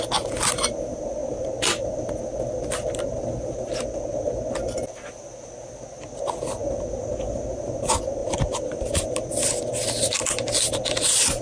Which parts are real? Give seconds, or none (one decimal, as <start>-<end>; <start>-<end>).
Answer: 0.0-8.2; 8.8-11.4